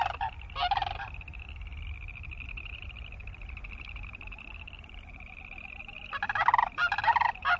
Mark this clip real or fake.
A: real